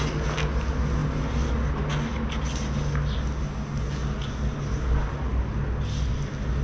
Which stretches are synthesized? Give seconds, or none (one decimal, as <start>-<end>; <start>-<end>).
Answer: none